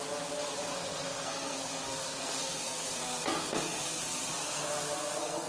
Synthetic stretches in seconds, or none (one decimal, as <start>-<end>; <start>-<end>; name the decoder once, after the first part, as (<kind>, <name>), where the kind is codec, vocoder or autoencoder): 0.7-4.0 (codec, SNAC); 4.4-5.5